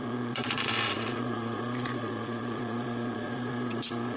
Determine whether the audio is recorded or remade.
remade